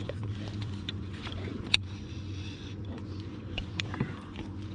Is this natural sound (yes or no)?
no